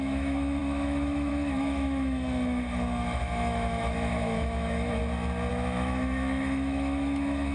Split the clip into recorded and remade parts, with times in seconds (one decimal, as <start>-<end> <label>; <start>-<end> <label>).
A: 0.0-5.0 remade; 5.0-5.5 recorded; 5.5-7.5 remade